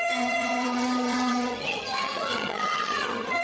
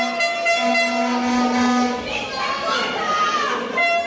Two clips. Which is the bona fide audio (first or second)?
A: second